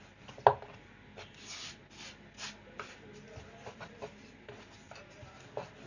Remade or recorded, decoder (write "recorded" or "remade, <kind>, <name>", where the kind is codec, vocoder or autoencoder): recorded